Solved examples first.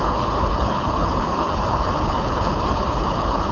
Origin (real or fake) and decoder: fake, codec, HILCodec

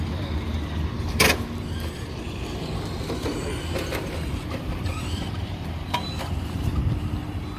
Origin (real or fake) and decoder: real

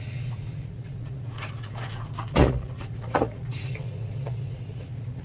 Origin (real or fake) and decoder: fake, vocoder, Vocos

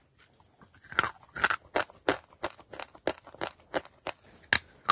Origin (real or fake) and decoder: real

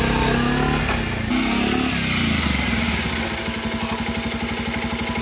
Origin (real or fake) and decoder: real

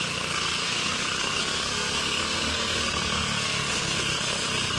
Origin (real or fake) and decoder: fake, codec, SNAC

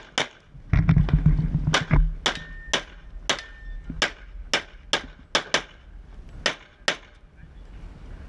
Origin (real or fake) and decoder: real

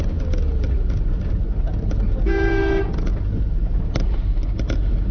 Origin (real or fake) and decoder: real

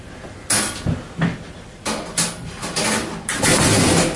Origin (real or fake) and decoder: real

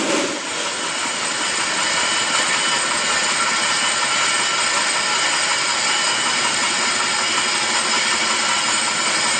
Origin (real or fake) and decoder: real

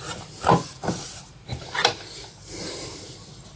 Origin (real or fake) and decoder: real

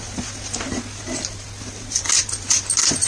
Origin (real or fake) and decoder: real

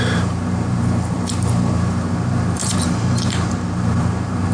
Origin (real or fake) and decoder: fake, vocoder, BigVGAN v2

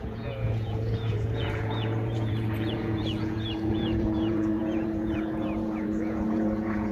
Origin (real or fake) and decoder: fake, vocoder, Vocos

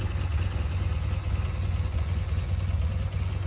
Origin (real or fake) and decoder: fake, vocoder, Vocos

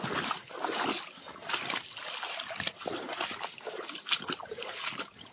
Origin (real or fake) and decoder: real